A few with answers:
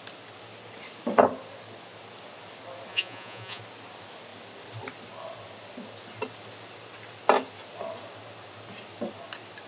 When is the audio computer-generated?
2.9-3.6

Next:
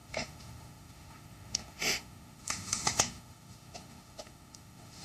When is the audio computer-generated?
0.0-5.0

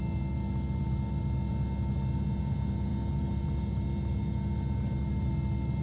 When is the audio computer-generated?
none

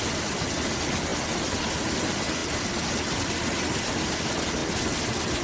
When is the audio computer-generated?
none

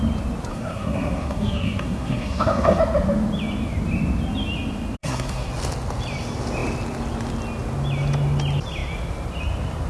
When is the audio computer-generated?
0.5-2.8; 5.0-5.5

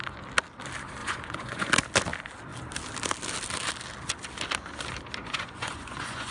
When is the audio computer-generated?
1.0-1.7; 5.2-6.3

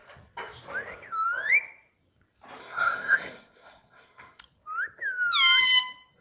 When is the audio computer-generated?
2.6-4.4

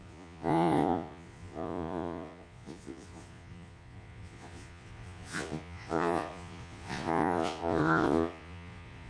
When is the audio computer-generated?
0.0-9.1